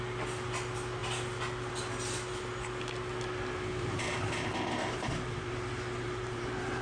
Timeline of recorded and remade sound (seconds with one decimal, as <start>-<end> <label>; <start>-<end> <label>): 0.0-3.7 recorded; 3.7-6.8 remade